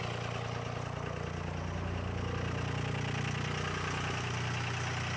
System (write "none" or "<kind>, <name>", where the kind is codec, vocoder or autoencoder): none